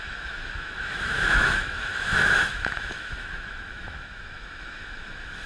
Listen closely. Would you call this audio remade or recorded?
remade